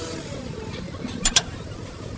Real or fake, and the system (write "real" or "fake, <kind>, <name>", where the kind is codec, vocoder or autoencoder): fake, vocoder, BigVGAN v2